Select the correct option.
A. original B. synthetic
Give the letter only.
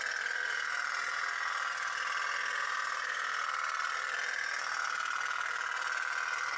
A